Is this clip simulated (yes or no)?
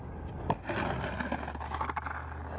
no